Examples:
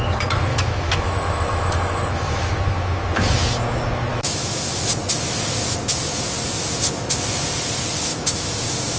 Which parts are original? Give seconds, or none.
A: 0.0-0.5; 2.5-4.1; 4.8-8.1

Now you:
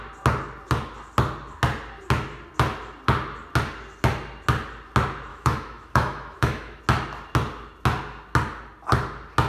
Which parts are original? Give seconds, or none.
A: 0.0-5.3; 6.8-9.5

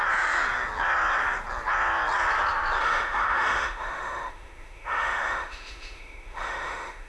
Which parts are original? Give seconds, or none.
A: 0.0-2.8